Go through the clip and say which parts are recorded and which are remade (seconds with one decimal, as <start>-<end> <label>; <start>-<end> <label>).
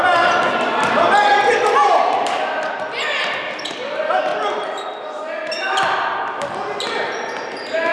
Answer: 0.0-7.9 recorded